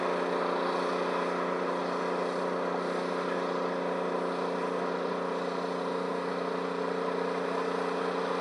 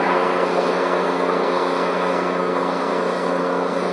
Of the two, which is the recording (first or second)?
first